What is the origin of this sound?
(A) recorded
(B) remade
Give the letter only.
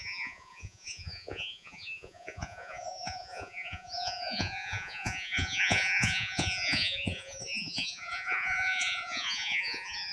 B